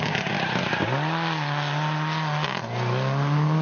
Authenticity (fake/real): real